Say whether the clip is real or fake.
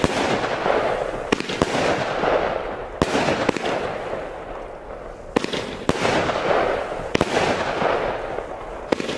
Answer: real